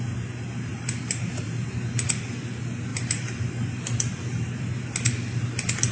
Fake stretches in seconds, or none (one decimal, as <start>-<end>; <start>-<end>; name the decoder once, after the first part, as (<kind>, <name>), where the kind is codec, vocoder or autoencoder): 0.7-1.7 (vocoder, BigVGAN v2); 2.9-4.6